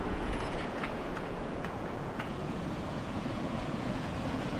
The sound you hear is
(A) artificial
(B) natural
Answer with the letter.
A